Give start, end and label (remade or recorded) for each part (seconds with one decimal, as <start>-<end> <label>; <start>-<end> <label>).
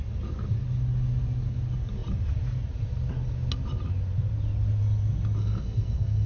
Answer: 0.0-5.4 recorded; 5.4-6.3 remade